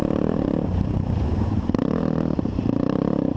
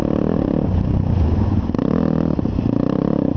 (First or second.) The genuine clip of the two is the second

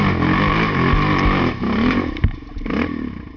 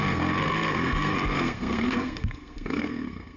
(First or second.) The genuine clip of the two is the first